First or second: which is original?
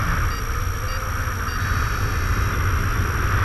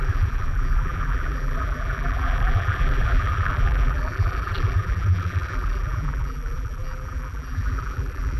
first